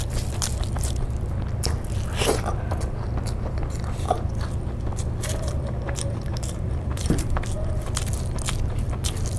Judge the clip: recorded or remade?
remade